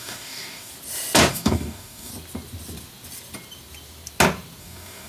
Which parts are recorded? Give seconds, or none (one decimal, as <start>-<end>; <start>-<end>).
0.7-1.3; 2.1-4.6